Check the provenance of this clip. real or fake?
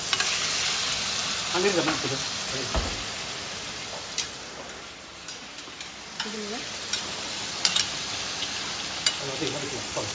real